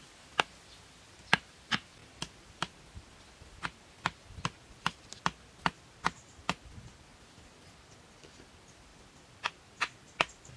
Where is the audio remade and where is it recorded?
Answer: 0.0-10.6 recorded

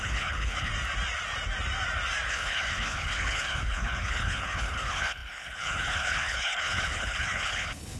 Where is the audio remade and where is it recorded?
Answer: 0.0-0.7 remade; 0.7-2.3 recorded; 2.3-8.0 remade